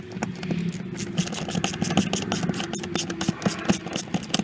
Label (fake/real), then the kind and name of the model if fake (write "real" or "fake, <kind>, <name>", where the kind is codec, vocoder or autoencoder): real